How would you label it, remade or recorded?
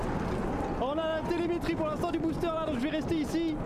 recorded